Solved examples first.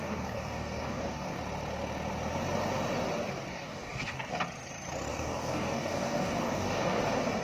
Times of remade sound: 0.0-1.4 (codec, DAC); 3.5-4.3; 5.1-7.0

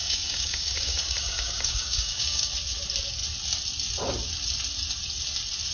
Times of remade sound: 0.0-2.5 (codec, DAC)

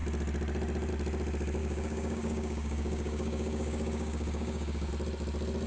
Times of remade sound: 1.6-4.9 (codec, DAC)

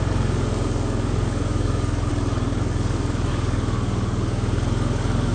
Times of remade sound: 0.0-2.1 (codec, DAC); 2.6-5.3

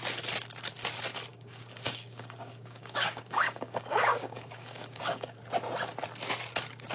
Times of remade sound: 1.3-5.4 (codec, DAC)

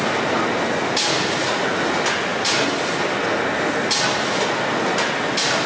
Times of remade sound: none

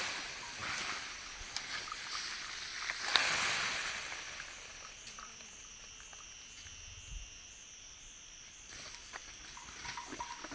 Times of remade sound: none

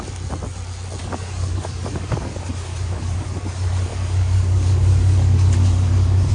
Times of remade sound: 1.0-3.4 (codec, DAC); 3.9-6.3